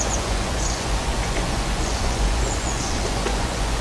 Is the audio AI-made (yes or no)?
yes